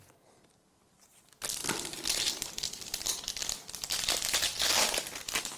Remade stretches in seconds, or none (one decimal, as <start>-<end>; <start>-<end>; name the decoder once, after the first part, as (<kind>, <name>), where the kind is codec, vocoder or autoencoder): 1.6-2.2 (vocoder, BigVGAN v2)